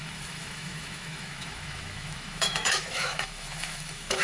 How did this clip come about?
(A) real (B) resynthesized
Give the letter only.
B